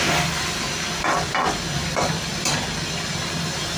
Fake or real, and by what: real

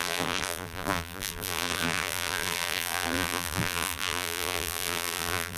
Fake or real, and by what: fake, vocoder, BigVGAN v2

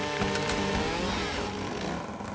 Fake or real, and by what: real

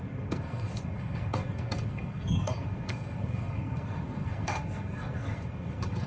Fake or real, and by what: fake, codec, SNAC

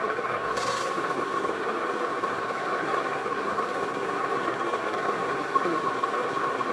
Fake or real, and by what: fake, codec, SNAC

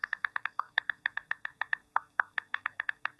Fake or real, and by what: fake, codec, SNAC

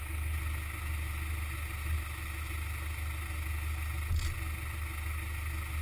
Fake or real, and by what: real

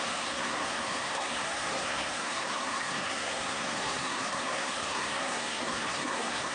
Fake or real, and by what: fake, codec, SNAC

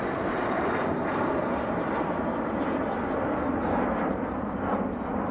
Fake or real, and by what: real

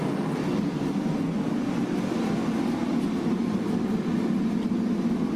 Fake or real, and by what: real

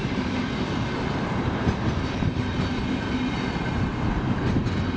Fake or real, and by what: real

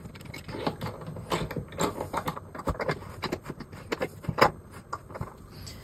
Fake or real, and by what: real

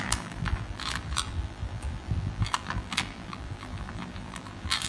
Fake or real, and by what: fake, vocoder, BigVGAN v2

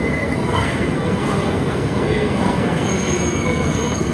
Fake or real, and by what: fake, codec, SNAC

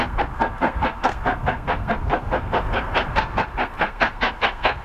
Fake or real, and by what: fake, codec, SNAC